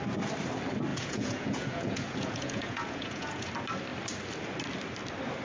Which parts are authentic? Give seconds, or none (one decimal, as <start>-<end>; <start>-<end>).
0.0-0.9; 3.5-5.4